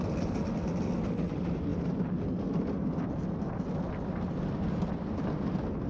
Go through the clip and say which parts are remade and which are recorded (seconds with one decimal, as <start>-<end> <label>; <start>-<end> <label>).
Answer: 0.0-5.9 recorded